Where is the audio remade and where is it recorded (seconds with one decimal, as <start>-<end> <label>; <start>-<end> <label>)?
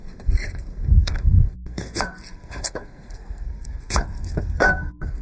0.0-5.2 remade